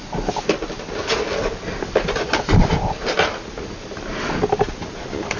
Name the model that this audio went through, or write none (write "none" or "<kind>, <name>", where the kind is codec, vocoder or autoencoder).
none